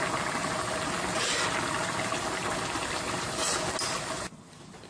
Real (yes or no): yes